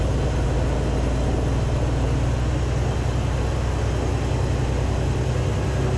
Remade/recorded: recorded